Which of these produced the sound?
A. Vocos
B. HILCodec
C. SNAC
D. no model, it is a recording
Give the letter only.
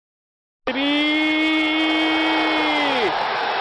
D